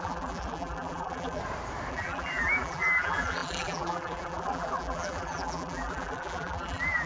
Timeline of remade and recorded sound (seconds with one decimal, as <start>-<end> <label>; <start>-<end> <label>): 0.0-1.4 remade; 1.4-1.9 recorded; 1.9-7.1 remade